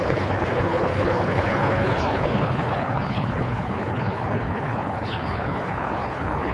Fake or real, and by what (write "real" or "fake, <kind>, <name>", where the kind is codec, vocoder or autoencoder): fake, codec, HILCodec